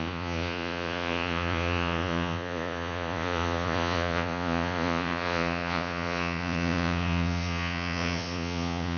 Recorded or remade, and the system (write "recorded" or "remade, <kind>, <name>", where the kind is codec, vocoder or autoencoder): remade, vocoder, Vocos